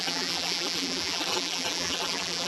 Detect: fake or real fake